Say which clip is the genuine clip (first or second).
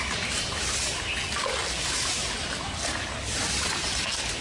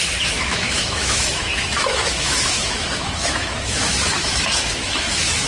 first